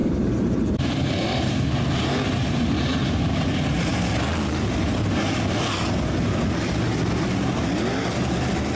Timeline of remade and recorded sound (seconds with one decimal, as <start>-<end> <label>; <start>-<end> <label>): 0.0-1.8 remade; 1.8-3.0 recorded; 3.0-3.5 remade; 3.5-8.7 recorded